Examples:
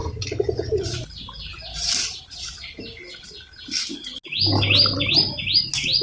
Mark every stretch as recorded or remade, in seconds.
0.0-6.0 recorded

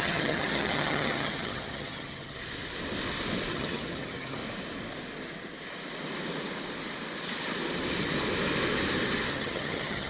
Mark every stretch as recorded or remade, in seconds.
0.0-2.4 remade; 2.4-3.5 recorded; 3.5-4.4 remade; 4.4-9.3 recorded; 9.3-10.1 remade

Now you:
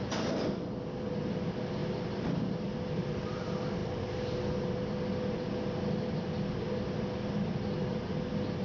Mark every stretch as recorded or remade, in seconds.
0.0-8.6 recorded

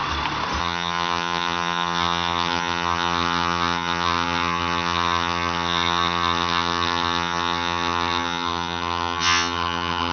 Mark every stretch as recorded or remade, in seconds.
0.0-0.6 recorded; 0.6-10.1 remade